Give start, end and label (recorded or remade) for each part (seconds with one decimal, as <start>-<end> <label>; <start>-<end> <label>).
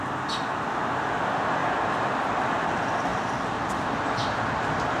0.0-3.1 recorded; 3.1-4.5 remade; 4.5-5.0 recorded